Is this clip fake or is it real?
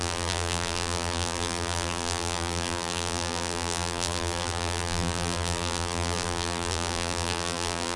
fake